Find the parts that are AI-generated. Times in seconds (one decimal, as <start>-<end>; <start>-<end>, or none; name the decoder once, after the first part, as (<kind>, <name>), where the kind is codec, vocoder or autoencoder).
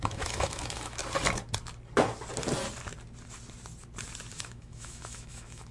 0.0-1.0 (autoencoder, DAC-VAE); 4.3-5.7